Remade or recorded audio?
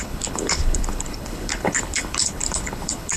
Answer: remade